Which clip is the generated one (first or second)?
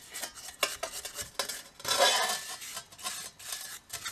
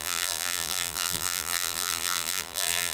second